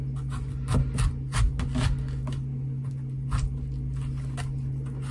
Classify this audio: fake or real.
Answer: real